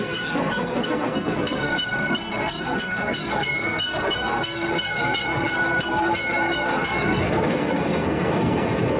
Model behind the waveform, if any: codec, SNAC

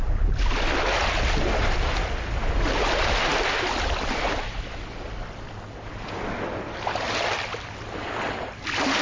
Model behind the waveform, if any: none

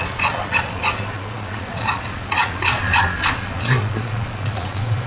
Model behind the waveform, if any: vocoder, Vocos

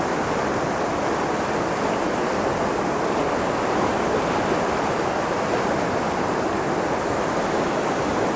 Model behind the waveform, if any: none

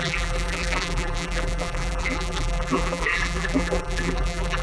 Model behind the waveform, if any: vocoder, BigVGAN v2